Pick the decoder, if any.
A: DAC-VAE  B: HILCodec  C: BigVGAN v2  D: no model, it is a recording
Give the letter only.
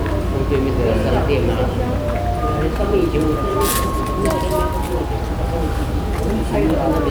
D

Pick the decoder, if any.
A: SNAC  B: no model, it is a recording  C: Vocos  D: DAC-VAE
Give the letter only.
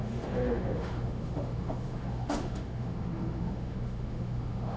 D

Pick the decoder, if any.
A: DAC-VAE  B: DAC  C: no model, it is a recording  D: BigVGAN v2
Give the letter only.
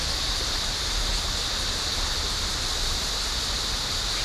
C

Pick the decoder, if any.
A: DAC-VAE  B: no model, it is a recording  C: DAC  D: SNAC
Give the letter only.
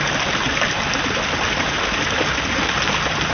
B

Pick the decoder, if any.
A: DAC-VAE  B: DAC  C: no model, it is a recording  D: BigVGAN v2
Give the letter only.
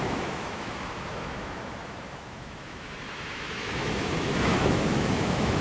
A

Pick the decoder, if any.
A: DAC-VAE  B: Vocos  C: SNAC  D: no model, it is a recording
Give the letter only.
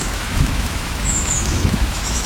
A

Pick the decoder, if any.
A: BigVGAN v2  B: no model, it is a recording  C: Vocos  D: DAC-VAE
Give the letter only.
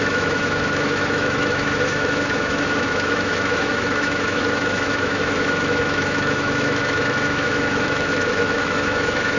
D